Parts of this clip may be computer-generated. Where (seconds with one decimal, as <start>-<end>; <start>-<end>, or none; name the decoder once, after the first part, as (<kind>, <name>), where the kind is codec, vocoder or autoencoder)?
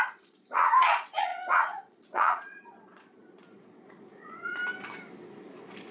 0.0-4.6 (vocoder, Vocos)